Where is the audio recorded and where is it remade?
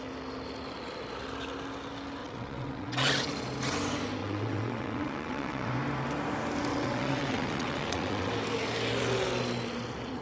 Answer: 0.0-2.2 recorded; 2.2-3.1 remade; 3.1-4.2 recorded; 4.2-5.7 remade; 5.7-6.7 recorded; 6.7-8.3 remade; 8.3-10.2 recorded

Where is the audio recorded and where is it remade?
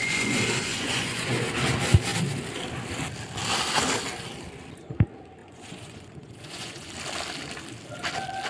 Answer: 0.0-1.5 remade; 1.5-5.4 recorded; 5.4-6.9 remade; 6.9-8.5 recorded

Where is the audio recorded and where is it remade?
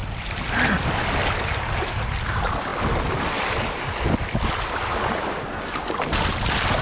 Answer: 0.0-6.8 recorded